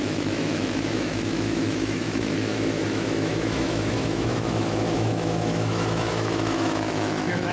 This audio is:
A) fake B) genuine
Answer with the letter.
A